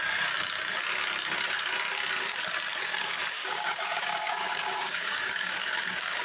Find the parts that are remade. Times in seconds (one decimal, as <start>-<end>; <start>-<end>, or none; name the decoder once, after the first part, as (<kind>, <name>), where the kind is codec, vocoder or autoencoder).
3.0-6.2 (codec, DAC)